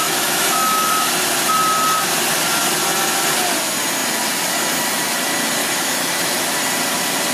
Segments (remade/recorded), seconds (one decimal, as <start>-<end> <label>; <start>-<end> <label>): 0.0-1.1 remade; 1.1-5.6 recorded; 5.6-6.6 remade; 6.6-7.3 recorded